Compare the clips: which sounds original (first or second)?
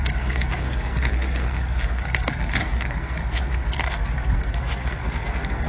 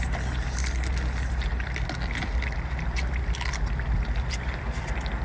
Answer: second